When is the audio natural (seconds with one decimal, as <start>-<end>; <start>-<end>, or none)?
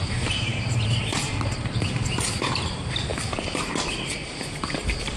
3.1-4.5